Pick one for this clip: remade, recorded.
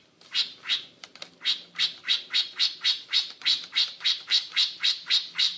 remade